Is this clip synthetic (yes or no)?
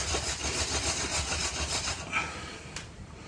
no